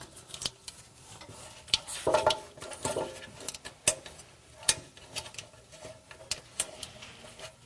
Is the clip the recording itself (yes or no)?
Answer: yes